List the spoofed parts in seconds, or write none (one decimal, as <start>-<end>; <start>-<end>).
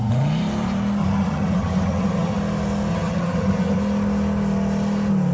1.0-2.4; 2.9-3.8